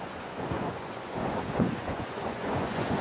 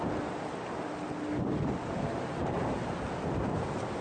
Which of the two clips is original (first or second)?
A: second